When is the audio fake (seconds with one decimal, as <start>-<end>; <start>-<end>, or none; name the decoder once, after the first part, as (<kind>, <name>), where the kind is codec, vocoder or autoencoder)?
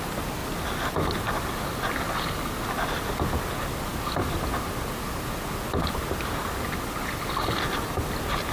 none